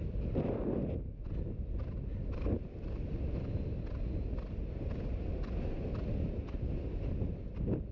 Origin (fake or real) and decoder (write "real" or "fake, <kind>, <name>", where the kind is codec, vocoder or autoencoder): real